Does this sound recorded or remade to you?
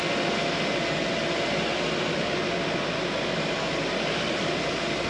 recorded